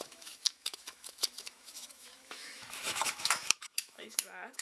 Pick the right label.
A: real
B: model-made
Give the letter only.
B